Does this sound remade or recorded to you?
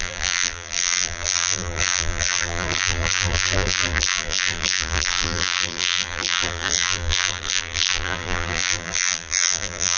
remade